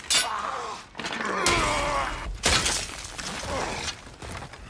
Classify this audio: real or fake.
real